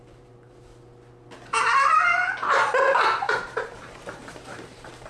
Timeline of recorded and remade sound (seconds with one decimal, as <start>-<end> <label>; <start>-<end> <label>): 0.0-0.7 remade; 0.7-1.7 recorded; 1.7-2.1 remade; 2.1-2.9 recorded; 2.9-5.1 remade